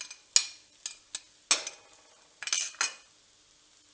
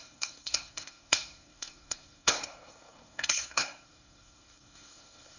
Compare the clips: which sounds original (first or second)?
first